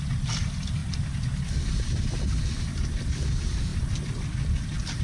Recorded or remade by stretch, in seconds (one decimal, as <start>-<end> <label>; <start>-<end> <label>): 0.0-5.0 recorded